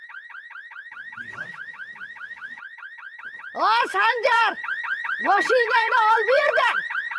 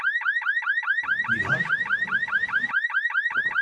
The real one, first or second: second